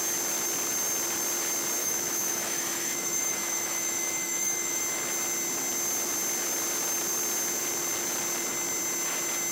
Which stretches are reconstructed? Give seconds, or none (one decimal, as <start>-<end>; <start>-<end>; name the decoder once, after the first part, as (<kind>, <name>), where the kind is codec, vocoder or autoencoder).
1.8-4.8 (autoencoder, DAC-VAE)